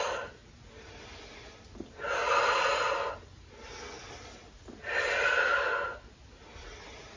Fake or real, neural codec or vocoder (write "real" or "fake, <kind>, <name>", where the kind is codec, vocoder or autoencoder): real